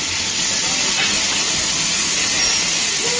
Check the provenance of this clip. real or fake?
real